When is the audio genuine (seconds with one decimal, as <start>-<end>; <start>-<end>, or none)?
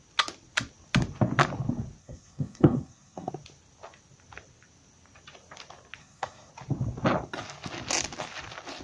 0.0-2.0; 3.3-6.0; 6.5-8.8